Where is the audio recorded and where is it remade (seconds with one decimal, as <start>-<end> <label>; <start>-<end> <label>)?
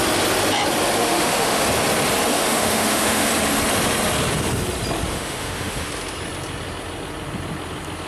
0.0-1.0 recorded; 1.0-1.6 remade; 1.6-2.3 recorded; 2.3-3.3 remade; 3.3-5.1 recorded; 5.1-5.9 remade; 5.9-8.1 recorded